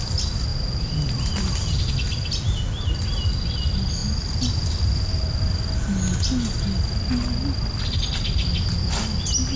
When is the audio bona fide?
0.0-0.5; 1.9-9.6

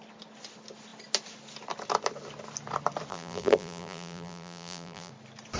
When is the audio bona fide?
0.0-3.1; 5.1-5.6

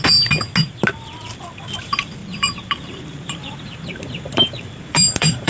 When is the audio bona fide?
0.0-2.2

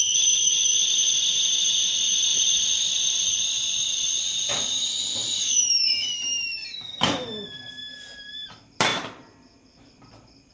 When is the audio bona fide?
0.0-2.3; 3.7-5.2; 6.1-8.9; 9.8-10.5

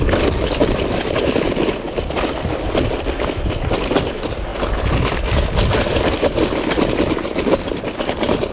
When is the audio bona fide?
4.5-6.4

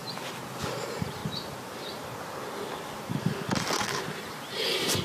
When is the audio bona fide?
0.0-0.7; 1.2-4.2

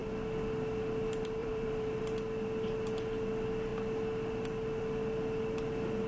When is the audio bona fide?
0.0-1.4; 2.0-6.1

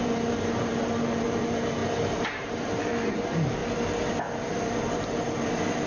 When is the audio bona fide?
3.6-4.5